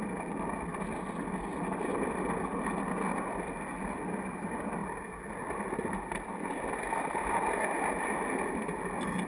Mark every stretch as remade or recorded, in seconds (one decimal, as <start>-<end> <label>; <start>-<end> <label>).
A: 0.0-9.3 recorded